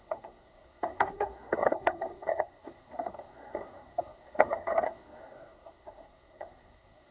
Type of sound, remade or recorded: remade